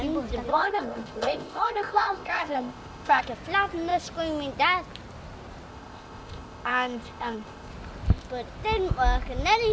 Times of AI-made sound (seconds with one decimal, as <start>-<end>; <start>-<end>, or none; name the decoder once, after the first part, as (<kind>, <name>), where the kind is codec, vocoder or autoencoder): 0.5-3.2 (codec, ZipCodec); 5.7-7.7